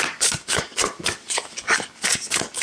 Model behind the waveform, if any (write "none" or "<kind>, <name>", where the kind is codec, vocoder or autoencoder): codec, DAC